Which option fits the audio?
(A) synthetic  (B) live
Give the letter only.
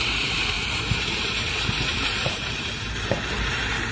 A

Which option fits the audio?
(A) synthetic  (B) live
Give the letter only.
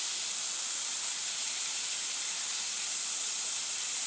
B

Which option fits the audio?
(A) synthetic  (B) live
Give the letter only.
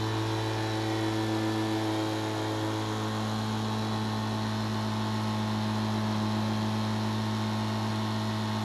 B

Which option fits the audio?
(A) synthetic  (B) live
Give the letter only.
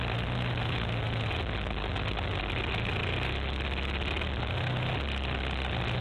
B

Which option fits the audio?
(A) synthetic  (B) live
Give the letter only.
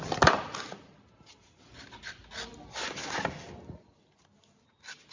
B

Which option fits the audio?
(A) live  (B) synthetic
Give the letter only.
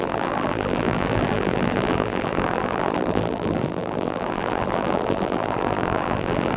B